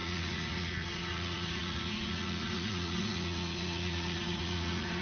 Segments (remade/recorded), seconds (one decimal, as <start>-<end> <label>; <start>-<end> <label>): 0.0-5.0 remade